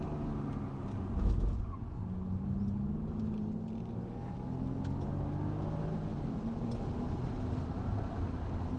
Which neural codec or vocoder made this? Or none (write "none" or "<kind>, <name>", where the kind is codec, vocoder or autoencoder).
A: none